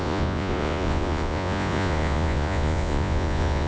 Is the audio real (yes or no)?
no